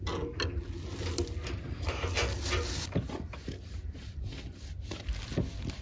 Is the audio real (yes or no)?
yes